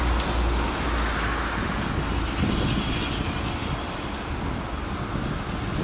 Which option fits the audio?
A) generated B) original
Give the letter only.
B